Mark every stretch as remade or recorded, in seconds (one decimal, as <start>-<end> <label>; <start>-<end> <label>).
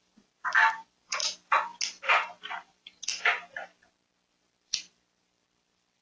0.0-1.2 remade; 1.2-2.1 recorded; 2.1-3.1 remade; 3.1-4.4 recorded; 4.4-6.0 remade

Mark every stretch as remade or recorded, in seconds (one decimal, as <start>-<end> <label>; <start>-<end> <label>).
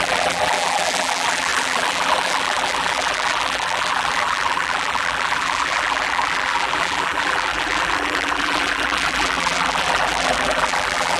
0.0-11.2 remade